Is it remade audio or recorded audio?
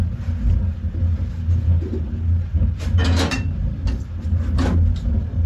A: recorded